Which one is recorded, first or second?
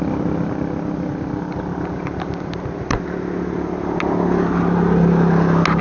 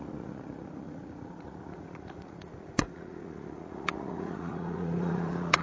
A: first